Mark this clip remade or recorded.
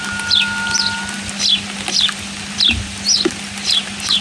recorded